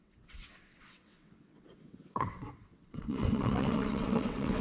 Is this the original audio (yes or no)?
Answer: no